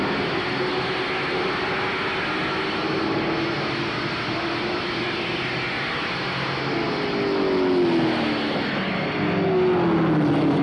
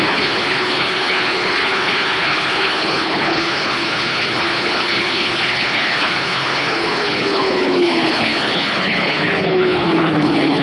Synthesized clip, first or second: second